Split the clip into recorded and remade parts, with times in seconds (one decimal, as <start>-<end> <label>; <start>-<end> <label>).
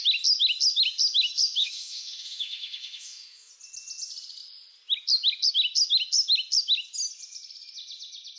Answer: 0.0-1.6 recorded; 1.6-3.5 remade; 3.5-8.4 recorded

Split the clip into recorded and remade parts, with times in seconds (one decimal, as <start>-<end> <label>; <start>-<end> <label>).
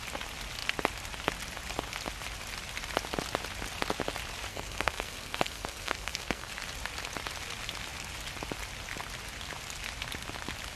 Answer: 0.0-4.5 recorded; 4.5-6.5 remade; 6.5-10.8 recorded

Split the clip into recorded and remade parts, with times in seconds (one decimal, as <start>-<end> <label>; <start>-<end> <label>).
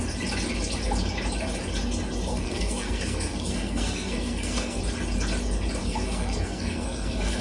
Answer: 0.0-2.3 recorded; 2.3-4.8 remade; 4.8-5.8 recorded; 5.8-7.4 remade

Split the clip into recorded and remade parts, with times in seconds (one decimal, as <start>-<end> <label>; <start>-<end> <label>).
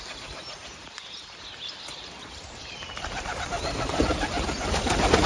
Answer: 0.0-0.6 recorded; 0.6-3.5 remade; 3.5-5.3 recorded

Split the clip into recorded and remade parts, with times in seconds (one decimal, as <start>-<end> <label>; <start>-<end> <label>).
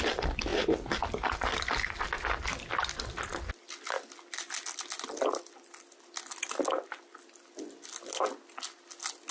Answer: 0.0-9.3 recorded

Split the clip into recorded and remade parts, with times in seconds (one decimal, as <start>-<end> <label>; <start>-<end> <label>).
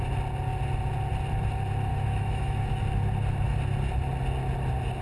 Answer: 0.0-1.9 recorded; 1.9-2.8 remade; 2.8-5.0 recorded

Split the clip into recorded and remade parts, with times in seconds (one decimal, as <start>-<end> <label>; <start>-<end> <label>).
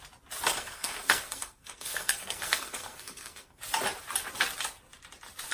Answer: 0.0-0.5 recorded; 0.5-3.6 remade; 3.6-5.5 recorded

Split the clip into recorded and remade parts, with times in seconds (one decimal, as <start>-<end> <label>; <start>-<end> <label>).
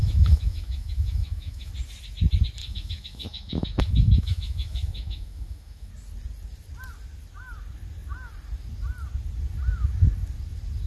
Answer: 0.0-1.7 remade; 1.7-2.6 recorded; 2.6-5.9 remade; 5.9-10.9 recorded